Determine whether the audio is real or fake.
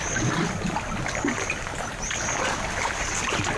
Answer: real